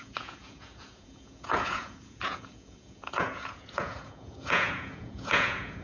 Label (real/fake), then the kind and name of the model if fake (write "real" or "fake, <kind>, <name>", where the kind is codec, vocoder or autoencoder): fake, vocoder, Vocos